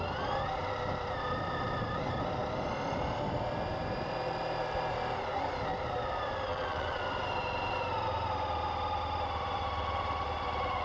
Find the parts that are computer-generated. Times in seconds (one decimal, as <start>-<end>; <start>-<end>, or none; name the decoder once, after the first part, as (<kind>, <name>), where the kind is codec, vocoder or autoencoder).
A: 6.5-7.0 (vocoder, WaveNeXt)